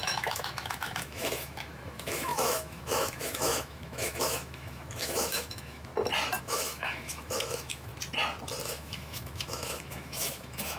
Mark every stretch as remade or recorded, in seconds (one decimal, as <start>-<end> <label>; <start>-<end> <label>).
0.0-5.9 remade; 5.9-6.4 recorded; 6.4-7.9 remade; 7.9-8.6 recorded; 8.6-10.8 remade